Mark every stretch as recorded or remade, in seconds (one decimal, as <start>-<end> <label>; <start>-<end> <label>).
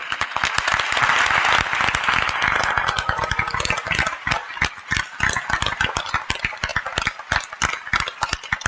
0.0-8.7 recorded